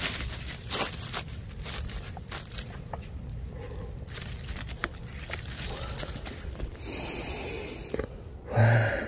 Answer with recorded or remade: remade